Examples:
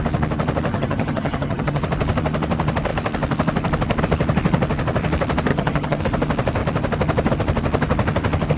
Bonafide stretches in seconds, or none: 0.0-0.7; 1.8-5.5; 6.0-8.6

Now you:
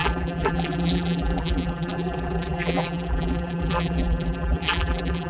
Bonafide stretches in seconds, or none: none

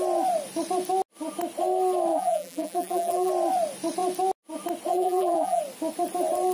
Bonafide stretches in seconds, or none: 0.0-2.1; 3.3-4.9; 5.6-6.5

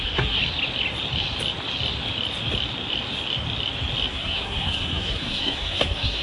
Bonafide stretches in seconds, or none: 0.4-4.1

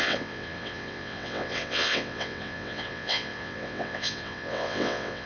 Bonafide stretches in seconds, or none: none

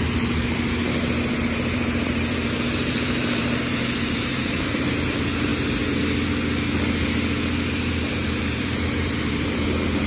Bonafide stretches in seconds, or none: 0.8-1.3; 5.5-8.1